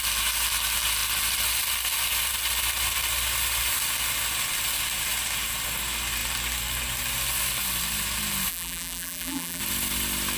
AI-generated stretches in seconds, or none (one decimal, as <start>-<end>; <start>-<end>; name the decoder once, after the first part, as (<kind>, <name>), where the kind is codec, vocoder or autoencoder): 8.5-9.6 (vocoder, BigVGAN v2)